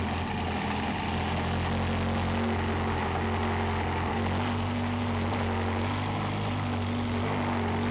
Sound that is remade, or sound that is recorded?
recorded